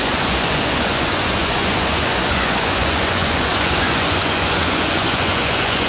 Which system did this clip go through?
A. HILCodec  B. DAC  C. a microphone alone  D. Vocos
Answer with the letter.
D